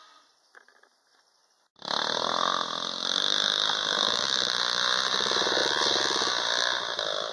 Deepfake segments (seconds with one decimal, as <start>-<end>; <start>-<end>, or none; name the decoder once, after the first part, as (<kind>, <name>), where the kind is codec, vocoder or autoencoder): none